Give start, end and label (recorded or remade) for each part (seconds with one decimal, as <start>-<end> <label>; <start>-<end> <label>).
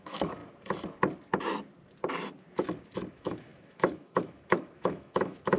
0.0-0.4 remade; 0.4-3.1 recorded; 3.1-5.6 remade